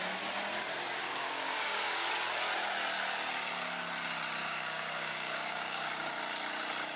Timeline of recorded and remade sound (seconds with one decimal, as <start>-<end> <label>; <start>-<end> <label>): 0.0-1.0 recorded; 1.0-2.1 remade; 2.1-4.4 recorded; 4.4-6.1 remade; 6.1-7.0 recorded